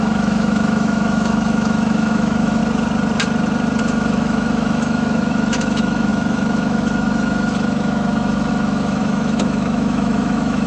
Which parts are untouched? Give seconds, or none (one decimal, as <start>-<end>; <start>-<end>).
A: 2.6-3.8